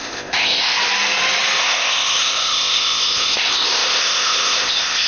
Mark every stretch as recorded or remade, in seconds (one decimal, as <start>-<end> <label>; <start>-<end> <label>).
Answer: 0.0-0.8 remade; 0.8-1.6 recorded; 1.6-5.1 remade